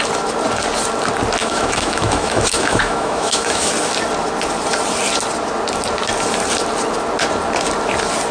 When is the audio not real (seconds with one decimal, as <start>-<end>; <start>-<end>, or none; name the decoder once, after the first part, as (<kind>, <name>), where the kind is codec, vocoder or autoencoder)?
1.4-3.7 (autoencoder, DAC-VAE)

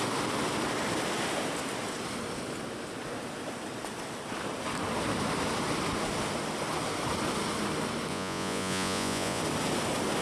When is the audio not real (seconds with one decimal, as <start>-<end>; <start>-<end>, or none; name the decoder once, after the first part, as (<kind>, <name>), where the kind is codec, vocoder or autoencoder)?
8.1-9.4 (vocoder, Vocos)

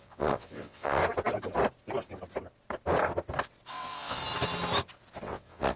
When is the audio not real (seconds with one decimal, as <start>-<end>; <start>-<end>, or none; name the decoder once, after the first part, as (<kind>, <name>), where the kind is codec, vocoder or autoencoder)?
0.0-1.0 (vocoder, WaveNeXt); 3.7-4.2; 5.2-5.8